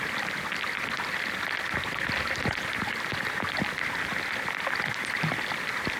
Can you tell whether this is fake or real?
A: real